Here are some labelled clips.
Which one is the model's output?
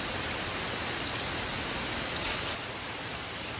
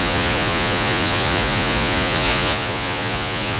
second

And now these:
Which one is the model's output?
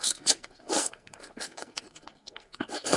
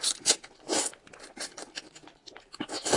first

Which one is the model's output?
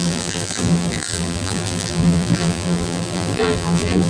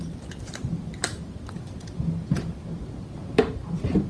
first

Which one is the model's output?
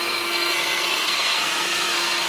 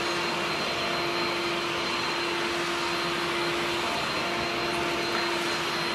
first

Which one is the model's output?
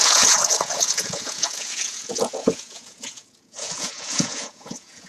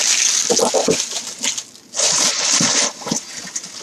first